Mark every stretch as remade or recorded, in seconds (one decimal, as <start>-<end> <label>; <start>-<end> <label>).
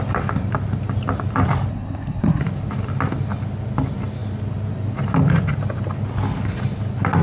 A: 0.0-1.7 recorded; 1.7-2.4 remade; 2.4-7.2 recorded